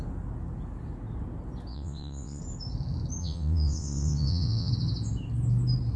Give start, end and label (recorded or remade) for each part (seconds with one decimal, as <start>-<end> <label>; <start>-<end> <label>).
0.0-1.7 recorded; 1.7-2.4 remade; 2.4-3.2 recorded; 3.2-4.7 remade; 4.7-6.0 recorded